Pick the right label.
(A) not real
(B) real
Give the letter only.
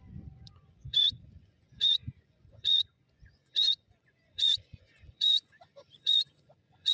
A